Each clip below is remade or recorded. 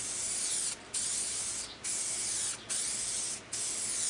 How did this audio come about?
recorded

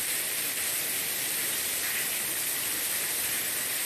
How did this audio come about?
recorded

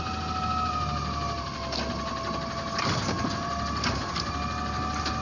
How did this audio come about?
recorded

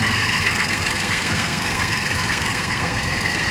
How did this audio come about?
remade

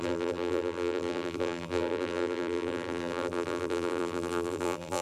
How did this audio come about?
remade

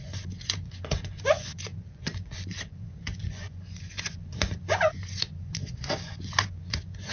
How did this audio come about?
remade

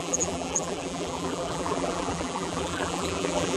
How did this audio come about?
remade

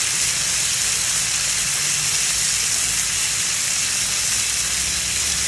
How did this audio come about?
recorded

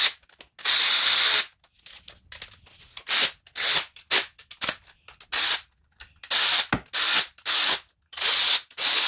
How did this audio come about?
recorded